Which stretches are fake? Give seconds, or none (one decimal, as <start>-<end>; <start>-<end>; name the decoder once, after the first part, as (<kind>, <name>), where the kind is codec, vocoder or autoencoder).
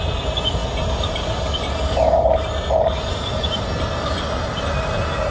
none